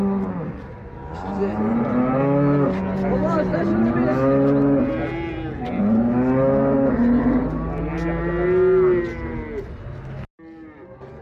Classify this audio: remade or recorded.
recorded